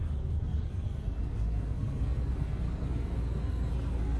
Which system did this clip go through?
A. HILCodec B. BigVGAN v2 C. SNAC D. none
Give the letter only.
C